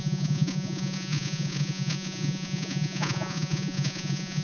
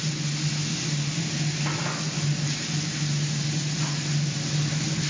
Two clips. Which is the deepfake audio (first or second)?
first